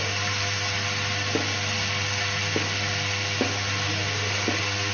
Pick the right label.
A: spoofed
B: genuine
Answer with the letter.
B